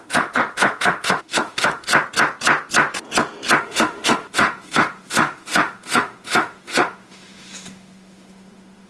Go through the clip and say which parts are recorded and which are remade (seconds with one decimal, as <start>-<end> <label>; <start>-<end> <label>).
0.0-1.9 remade; 1.9-3.6 recorded; 3.6-8.9 remade